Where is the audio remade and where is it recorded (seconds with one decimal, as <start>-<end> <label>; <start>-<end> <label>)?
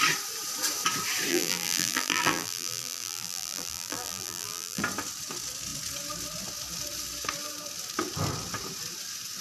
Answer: 0.0-1.3 recorded; 1.3-4.8 remade; 4.8-9.4 recorded